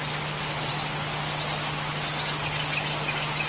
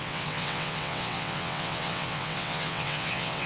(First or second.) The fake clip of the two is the second